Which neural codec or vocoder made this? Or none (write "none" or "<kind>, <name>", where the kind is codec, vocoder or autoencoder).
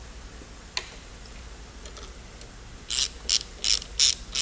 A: none